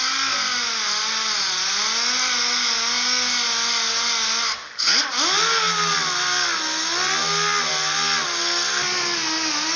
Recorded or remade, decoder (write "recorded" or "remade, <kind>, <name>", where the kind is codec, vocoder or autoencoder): recorded